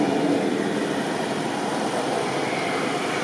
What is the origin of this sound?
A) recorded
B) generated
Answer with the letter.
B